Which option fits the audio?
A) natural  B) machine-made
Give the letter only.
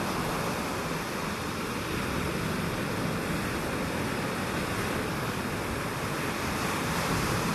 B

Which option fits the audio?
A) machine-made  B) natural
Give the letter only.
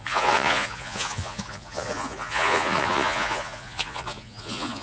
A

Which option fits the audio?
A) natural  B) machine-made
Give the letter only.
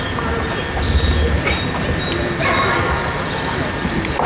A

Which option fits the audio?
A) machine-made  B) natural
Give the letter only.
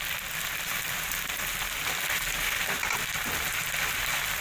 B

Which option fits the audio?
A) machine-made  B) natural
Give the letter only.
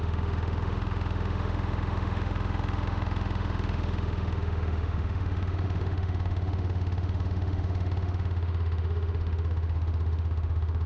A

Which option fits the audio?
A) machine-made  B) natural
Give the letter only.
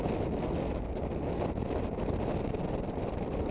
B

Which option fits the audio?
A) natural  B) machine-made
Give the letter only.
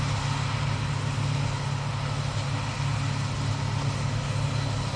A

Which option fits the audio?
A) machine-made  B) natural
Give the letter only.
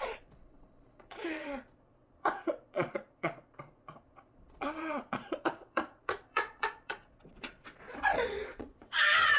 A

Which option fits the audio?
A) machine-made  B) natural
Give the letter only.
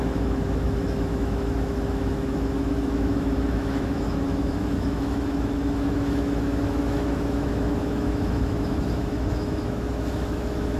A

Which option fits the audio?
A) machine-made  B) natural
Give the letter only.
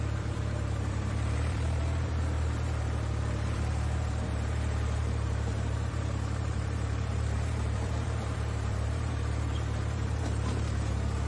A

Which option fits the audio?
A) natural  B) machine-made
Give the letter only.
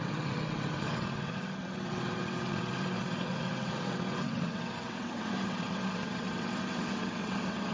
B